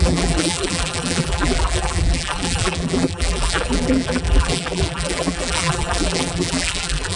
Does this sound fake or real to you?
fake